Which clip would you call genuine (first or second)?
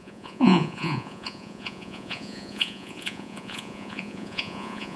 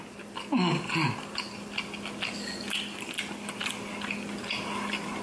second